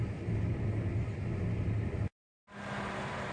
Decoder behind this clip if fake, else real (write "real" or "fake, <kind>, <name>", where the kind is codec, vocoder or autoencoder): real